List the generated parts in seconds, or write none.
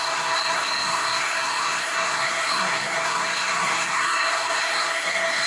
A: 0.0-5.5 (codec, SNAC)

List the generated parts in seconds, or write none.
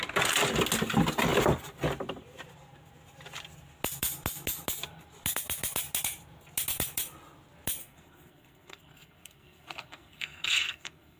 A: 7.8-11.2 (codec, SNAC)